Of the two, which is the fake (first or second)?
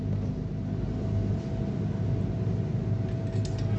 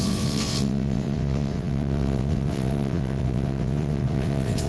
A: second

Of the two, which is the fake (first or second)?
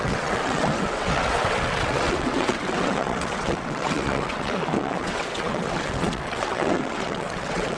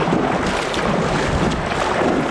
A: first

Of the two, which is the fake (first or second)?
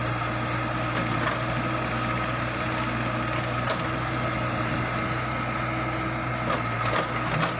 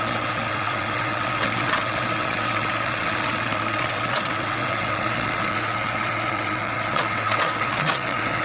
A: second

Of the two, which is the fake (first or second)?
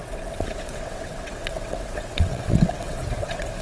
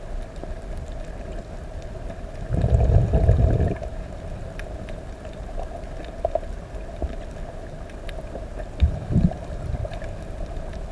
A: first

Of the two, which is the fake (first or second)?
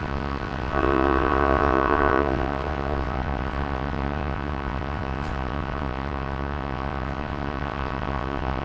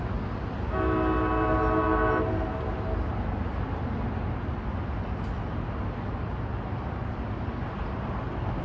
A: first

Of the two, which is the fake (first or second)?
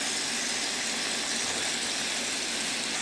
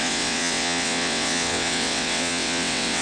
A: second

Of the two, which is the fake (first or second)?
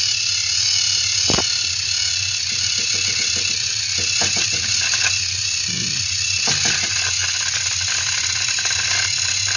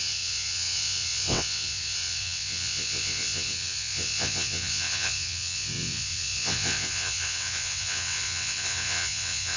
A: second